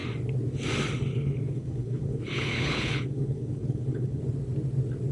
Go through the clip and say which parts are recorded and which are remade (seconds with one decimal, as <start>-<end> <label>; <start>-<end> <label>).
0.0-1.1 recorded; 1.1-4.2 remade; 4.2-5.1 recorded